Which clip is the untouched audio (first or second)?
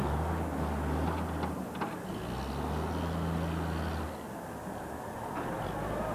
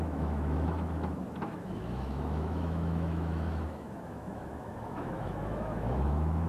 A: first